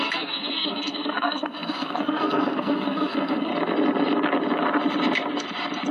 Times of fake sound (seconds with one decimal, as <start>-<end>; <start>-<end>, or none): 0.0-3.5